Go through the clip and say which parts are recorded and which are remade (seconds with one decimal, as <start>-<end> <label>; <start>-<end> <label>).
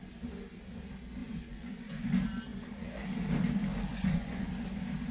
0.0-1.2 recorded; 1.2-2.1 remade; 2.1-3.9 recorded; 3.9-4.5 remade; 4.5-5.1 recorded